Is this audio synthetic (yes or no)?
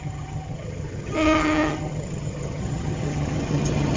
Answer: yes